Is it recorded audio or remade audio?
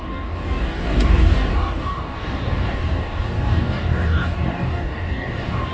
remade